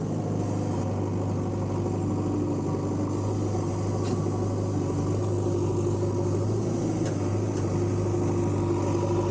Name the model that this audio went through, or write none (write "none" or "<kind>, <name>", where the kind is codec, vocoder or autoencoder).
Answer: none